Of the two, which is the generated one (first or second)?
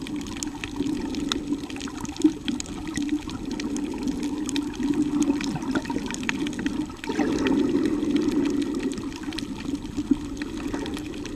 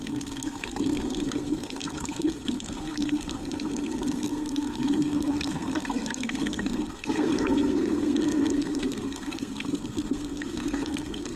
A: second